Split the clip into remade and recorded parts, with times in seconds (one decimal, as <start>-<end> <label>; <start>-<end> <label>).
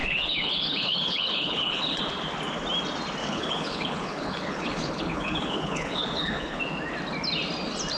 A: 0.0-2.0 remade; 2.0-3.2 recorded; 3.2-6.6 remade; 6.6-8.0 recorded